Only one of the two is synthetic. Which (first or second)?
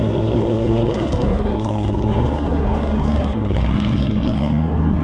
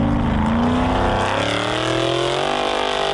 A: first